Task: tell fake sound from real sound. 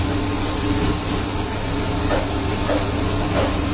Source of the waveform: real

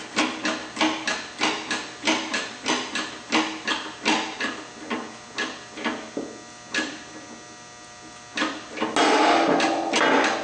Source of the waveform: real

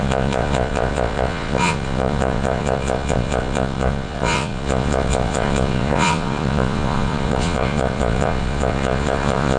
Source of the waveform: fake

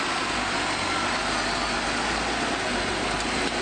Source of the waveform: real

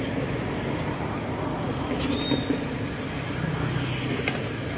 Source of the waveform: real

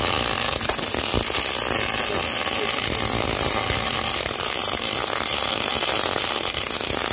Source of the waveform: real